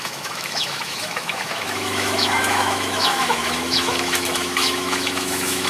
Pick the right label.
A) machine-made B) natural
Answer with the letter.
A